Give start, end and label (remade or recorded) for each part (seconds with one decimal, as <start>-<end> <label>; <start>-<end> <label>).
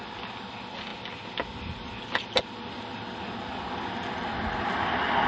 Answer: 0.0-5.3 recorded